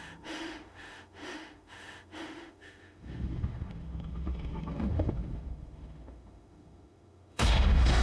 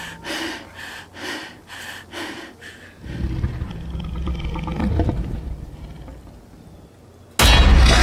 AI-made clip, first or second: first